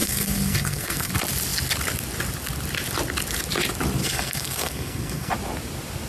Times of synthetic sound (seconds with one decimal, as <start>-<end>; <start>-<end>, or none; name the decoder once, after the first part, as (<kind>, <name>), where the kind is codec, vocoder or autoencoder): 0.0-1.1 (codec, SNAC); 4.0-5.3